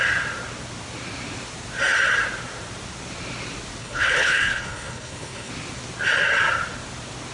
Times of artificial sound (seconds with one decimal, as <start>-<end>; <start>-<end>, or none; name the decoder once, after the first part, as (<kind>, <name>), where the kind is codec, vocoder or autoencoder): 3.8-5.5 (codec, HILCodec)